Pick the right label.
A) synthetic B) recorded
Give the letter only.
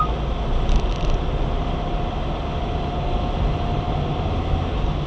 B